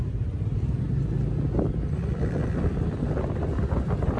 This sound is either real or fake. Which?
real